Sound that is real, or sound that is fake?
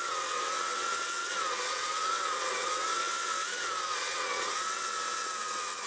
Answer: fake